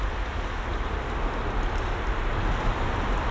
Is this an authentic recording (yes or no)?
yes